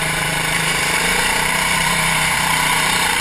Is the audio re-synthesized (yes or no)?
yes